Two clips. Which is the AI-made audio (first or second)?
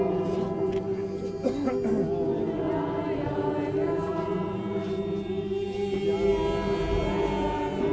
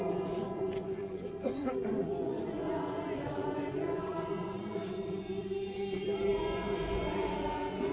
second